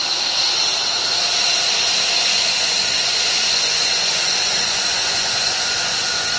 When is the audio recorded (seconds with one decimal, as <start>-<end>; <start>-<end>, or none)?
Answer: 0.0-2.3